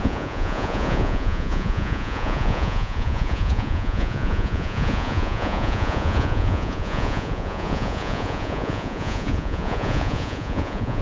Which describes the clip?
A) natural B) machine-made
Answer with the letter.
B